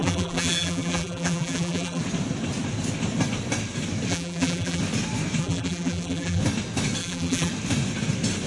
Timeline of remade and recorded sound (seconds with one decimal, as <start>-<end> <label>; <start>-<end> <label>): 0.0-2.0 remade; 2.0-4.1 recorded; 4.1-4.8 remade; 4.8-5.4 recorded; 5.4-6.4 remade; 6.4-7.0 recorded; 7.0-7.5 remade; 7.5-8.5 recorded